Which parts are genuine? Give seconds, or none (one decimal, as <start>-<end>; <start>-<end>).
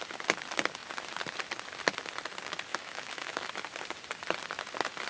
0.0-2.7; 3.5-5.1